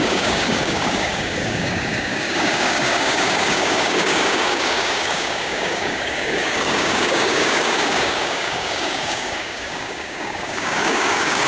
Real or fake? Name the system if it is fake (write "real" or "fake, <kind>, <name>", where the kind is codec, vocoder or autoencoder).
fake, codec, DAC